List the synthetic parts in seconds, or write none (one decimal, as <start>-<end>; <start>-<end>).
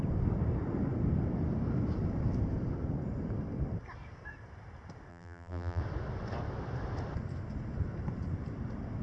5.1-5.8